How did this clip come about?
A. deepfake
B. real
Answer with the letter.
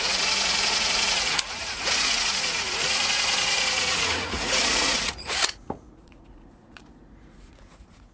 A